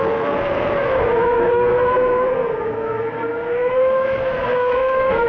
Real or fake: fake